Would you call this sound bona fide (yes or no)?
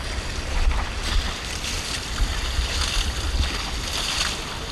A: yes